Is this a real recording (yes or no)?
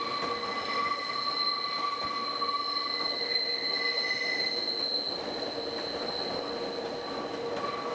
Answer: yes